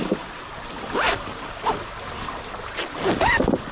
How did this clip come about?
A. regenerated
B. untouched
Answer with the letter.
B